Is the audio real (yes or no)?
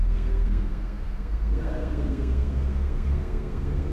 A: no